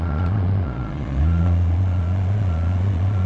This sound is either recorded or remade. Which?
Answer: remade